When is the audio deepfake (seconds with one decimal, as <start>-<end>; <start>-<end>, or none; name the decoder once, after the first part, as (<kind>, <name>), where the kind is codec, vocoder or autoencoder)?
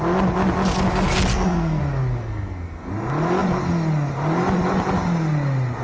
1.3-1.8 (codec, SNAC); 2.2-2.9